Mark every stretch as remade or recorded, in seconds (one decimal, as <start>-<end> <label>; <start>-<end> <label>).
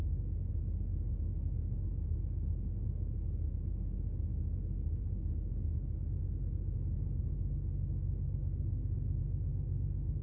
0.0-0.5 remade; 0.5-10.2 recorded